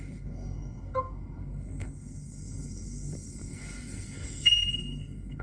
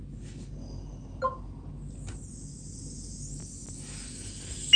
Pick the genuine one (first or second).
second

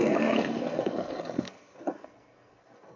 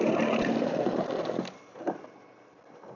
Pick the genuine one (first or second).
second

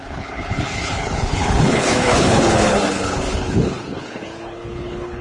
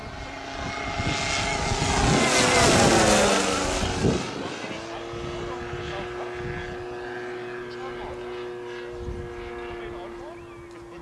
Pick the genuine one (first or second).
second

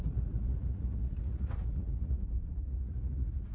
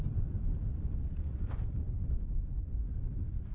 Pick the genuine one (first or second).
second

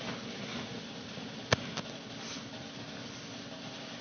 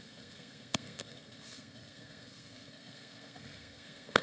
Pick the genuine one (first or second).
first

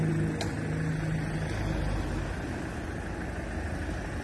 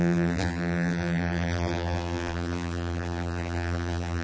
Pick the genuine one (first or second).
first